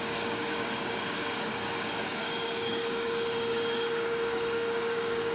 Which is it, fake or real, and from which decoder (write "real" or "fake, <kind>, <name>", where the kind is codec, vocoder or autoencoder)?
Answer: fake, codec, DAC